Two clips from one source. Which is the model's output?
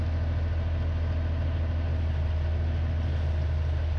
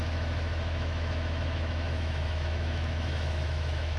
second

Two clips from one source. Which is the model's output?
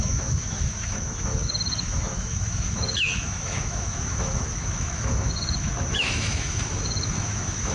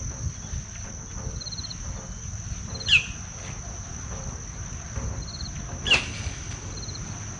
first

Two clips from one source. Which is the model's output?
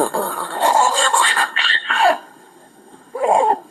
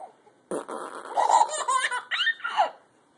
first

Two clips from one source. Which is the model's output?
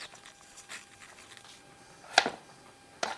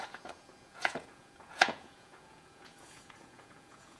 second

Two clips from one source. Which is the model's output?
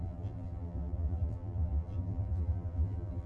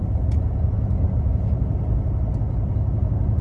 first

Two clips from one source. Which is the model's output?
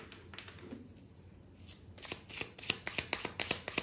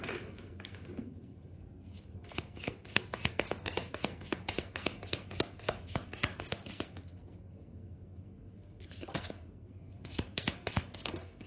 second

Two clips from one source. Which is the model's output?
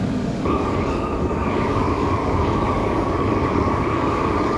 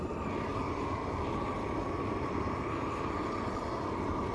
first